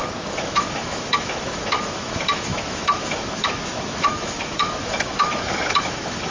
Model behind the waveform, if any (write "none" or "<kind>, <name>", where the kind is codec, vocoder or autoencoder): autoencoder, DAC-VAE